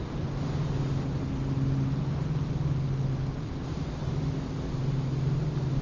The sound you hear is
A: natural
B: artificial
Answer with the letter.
A